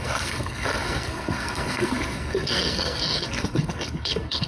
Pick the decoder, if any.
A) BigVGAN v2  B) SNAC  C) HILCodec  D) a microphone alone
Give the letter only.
B